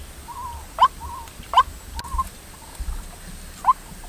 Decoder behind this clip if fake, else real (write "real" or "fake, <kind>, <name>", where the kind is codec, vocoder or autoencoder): real